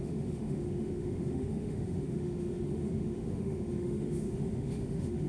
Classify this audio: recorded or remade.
remade